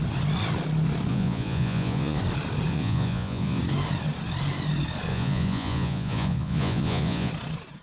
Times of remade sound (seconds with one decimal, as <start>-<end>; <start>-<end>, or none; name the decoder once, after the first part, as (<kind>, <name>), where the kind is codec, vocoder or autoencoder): 1.1-2.2 (vocoder, Vocos); 2.7-3.6; 5.1-7.3